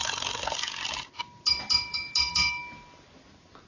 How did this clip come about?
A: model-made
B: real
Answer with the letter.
B